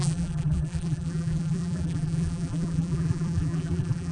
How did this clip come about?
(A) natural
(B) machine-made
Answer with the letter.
B